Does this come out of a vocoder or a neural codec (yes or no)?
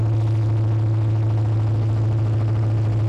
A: no